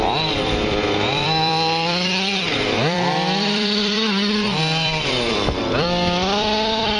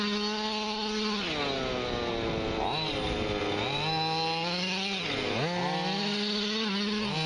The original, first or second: second